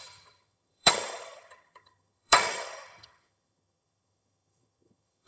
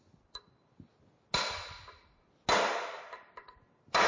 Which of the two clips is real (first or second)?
second